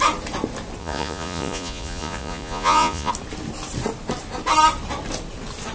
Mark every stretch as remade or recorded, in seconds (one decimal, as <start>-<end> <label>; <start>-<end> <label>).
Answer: 0.0-0.8 recorded; 0.8-3.1 remade; 3.1-5.7 recorded